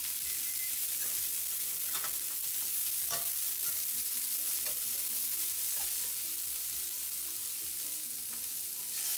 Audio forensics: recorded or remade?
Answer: recorded